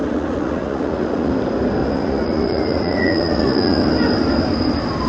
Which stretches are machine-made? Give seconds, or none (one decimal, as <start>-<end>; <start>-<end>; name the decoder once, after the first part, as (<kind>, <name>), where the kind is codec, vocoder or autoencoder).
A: 0.0-1.3 (vocoder, Vocos); 1.8-3.9